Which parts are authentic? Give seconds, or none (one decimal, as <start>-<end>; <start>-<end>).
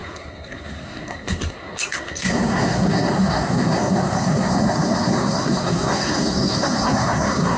none